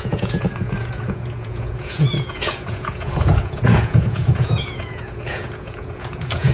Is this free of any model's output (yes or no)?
no